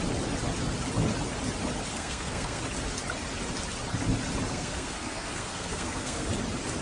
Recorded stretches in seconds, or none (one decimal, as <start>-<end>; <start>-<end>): 0.0-1.9; 2.6-4.5; 6.3-6.8